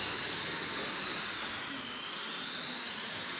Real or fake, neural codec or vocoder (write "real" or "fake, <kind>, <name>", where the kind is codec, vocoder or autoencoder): real